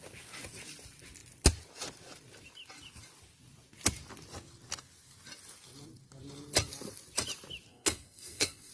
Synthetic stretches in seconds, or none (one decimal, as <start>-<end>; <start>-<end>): 7.7-8.7